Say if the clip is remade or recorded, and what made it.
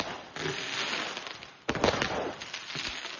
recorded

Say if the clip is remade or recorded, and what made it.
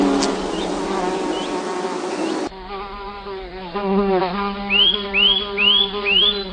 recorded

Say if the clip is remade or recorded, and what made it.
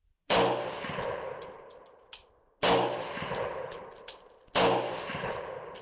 recorded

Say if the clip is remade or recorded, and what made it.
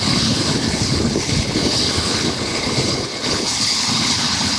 remade, codec, HILCodec